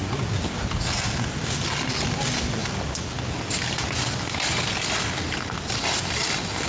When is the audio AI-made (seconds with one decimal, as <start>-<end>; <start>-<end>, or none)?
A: 2.6-6.7

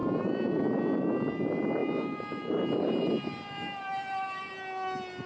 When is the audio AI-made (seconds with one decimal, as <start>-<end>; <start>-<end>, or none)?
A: 0.0-0.8; 1.8-4.5

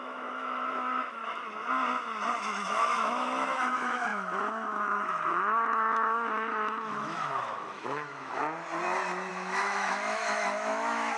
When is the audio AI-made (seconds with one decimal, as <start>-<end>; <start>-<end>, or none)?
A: 0.0-1.2; 2.4-8.4; 9.3-11.2

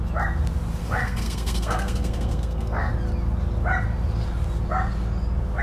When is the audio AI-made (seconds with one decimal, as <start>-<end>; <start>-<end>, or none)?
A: 0.8-2.9

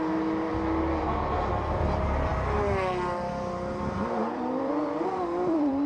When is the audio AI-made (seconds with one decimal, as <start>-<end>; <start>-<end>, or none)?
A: 4.0-5.9

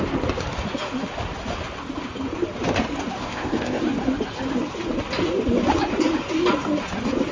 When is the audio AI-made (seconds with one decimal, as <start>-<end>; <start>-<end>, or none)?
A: 3.2-3.8

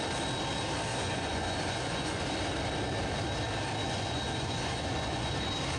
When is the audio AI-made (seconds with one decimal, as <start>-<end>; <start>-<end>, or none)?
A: 0.9-2.2; 3.8-5.3

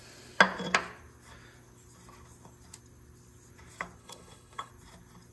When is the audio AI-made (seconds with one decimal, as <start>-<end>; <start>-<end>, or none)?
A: 4.0-4.7